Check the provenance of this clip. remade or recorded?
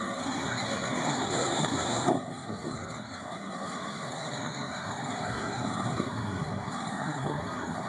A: remade